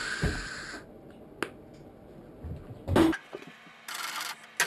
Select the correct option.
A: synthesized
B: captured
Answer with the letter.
B